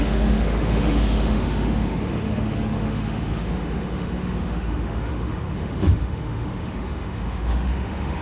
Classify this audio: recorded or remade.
remade